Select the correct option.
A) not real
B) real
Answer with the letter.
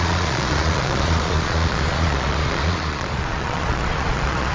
A